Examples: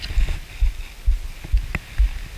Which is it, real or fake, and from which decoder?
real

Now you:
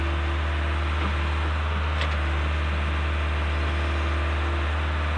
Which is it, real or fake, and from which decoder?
real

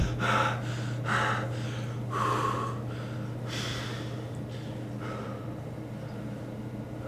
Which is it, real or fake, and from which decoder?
real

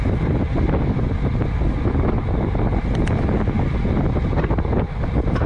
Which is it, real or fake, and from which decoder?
real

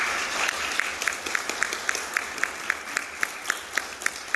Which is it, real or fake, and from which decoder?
real